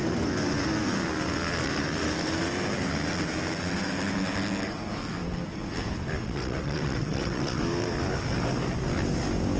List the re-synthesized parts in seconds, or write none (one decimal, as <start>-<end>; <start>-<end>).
6.2-7.6